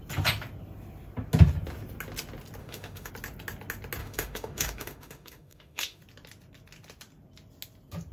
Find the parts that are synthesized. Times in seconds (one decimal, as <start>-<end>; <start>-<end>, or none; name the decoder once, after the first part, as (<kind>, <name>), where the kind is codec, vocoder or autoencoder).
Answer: 2.6-3.1 (autoencoder, DAC-VAE); 4.0-6.0